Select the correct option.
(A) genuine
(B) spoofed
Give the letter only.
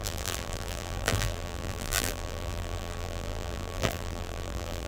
B